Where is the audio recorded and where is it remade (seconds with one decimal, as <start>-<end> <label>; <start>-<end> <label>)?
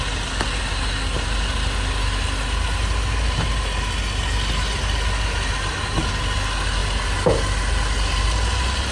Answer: 0.0-8.9 recorded